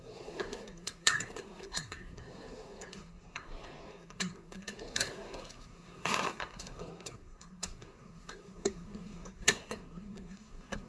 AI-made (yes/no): yes